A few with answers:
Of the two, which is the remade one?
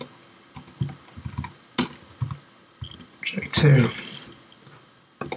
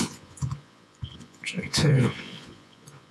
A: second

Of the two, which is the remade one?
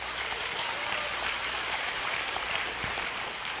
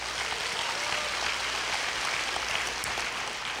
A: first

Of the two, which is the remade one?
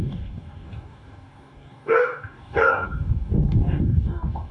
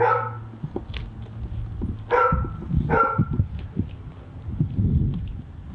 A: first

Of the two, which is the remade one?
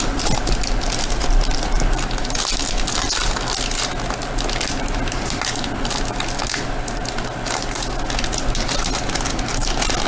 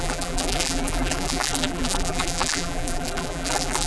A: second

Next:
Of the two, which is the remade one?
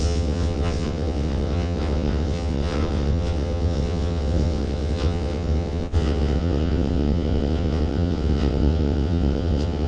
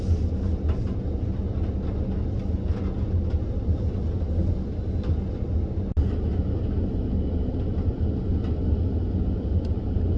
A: first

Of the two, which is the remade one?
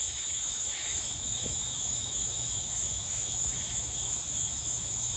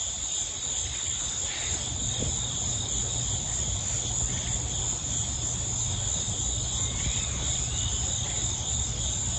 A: first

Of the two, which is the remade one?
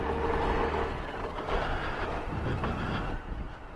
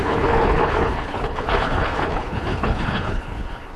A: second